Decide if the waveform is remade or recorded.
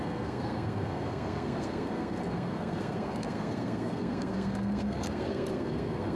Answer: remade